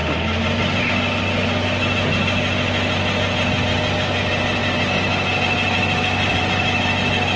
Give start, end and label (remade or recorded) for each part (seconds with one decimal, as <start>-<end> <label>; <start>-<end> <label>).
0.0-7.4 recorded